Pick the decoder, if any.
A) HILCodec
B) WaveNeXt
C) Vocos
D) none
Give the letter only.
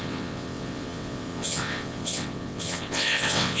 B